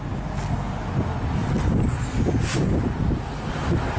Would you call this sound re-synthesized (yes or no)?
no